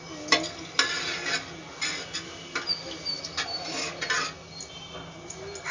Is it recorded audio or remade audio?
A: recorded